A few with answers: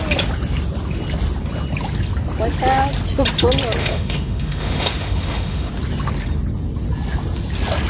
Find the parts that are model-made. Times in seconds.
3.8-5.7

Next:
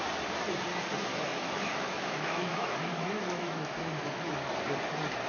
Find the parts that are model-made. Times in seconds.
1.1-4.3

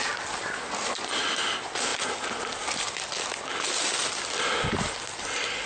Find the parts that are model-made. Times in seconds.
none

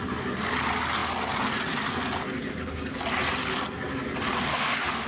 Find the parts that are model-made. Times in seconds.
4.5-5.1

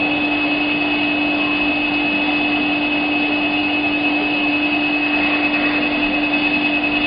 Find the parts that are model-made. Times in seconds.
3.6-4.5